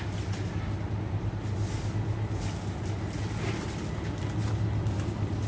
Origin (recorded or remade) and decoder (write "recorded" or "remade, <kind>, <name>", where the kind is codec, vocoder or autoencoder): recorded